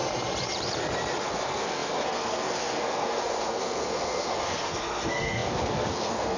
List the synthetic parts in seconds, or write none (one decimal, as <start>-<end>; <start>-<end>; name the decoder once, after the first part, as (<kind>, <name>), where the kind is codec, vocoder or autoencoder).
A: 1.2-6.4 (codec, SNAC)